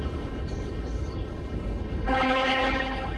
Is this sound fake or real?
fake